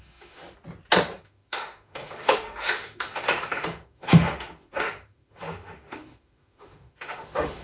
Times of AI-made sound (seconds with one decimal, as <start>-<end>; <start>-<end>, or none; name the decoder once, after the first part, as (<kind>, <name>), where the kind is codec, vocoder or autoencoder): 0.0-0.4 (autoencoder, DAC-VAE); 1.2-7.6